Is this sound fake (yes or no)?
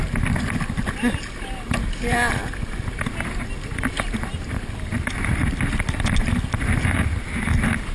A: no